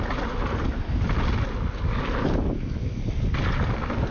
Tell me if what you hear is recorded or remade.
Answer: recorded